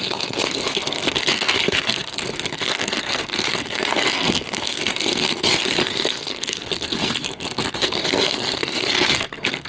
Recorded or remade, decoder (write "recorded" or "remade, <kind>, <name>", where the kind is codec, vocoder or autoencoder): remade, codec, SNAC